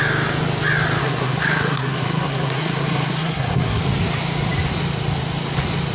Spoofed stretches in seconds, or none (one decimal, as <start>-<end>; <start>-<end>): 1.0-3.8